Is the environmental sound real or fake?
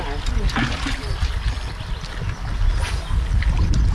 real